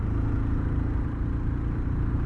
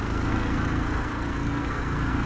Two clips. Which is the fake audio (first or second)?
second